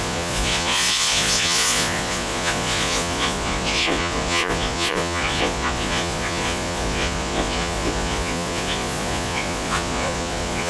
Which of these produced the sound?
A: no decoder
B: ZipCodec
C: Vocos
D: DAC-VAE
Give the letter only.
C